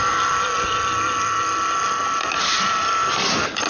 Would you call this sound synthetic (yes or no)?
no